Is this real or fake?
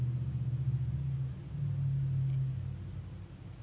real